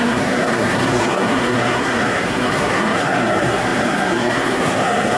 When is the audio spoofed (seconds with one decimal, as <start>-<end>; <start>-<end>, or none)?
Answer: 0.0-5.2